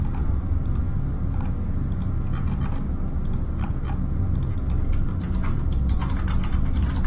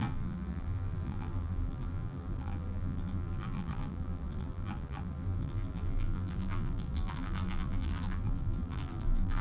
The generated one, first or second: second